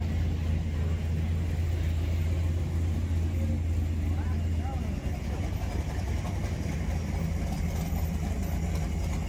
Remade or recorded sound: recorded